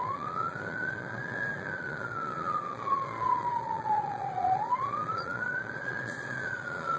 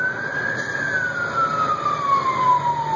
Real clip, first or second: second